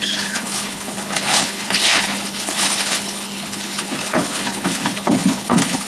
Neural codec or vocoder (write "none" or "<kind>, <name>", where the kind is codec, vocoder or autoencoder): codec, HILCodec